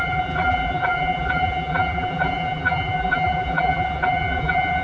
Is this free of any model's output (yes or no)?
no